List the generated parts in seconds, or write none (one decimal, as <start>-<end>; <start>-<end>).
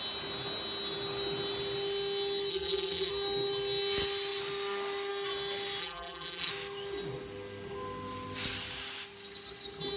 2.5-3.1; 5.8-6.5